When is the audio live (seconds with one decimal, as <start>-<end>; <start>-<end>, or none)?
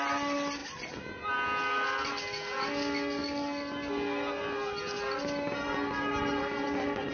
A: 0.0-7.1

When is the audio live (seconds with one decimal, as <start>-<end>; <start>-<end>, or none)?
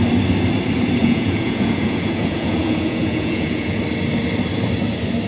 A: 0.0-1.0; 3.8-5.3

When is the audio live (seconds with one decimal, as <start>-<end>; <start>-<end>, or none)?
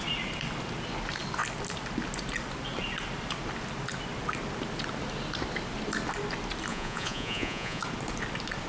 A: 0.0-6.7; 7.8-8.7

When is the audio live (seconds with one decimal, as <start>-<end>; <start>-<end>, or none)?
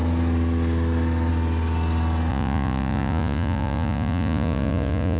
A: 0.0-2.3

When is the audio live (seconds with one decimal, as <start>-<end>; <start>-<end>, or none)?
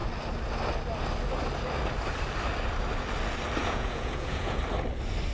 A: 0.0-3.6; 4.6-5.3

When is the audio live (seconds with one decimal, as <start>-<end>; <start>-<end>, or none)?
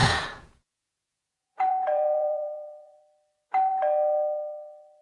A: 3.0-5.0